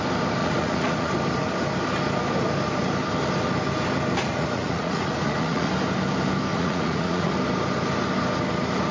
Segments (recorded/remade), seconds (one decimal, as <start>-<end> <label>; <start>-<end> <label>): 0.0-0.4 recorded; 0.4-1.1 remade; 1.1-4.2 recorded; 4.2-5.7 remade; 5.7-6.5 recorded; 6.5-7.3 remade; 7.3-8.9 recorded